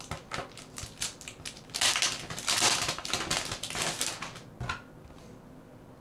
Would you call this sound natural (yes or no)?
yes